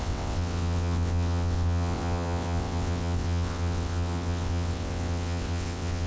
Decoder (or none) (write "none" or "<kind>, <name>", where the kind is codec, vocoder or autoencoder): vocoder, WaveNeXt